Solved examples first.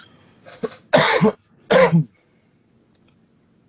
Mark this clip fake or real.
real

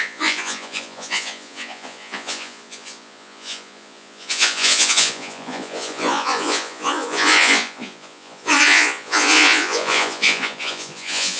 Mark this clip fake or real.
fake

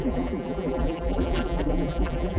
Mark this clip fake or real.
fake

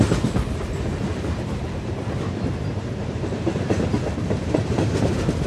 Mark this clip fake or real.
fake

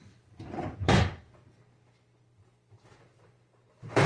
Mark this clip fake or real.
fake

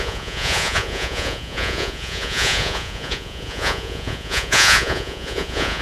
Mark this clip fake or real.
fake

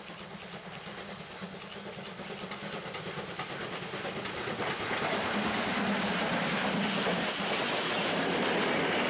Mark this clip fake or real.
real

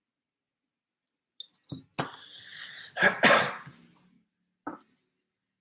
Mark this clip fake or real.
real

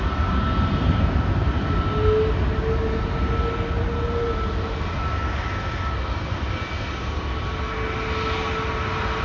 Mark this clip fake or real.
real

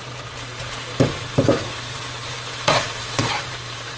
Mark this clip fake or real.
fake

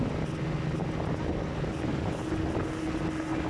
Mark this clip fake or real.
real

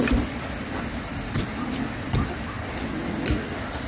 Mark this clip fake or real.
real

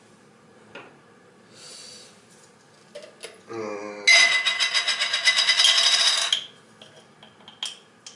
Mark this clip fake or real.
real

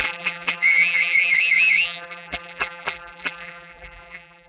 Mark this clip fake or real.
fake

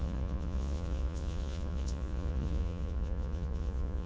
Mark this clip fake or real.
fake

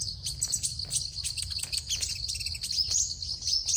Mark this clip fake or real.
real